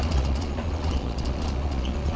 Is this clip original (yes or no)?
no